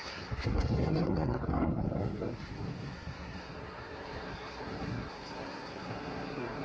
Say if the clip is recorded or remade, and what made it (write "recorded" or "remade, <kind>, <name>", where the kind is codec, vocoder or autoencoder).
remade, codec, SNAC